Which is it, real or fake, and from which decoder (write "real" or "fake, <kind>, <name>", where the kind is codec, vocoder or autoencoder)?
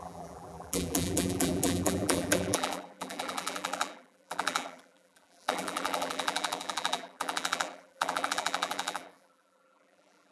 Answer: fake, vocoder, BigVGAN v2